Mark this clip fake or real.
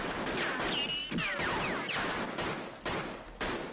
real